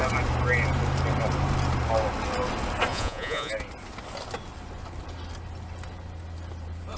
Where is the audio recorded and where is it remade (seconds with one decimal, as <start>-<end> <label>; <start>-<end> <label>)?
0.0-2.9 recorded; 2.9-3.5 remade; 3.5-7.0 recorded